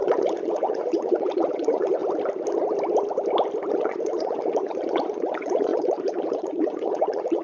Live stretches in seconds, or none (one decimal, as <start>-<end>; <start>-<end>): 2.0-3.7